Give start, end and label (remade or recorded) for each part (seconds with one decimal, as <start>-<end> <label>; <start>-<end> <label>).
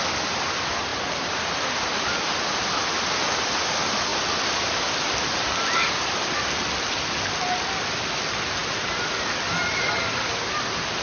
0.0-11.0 recorded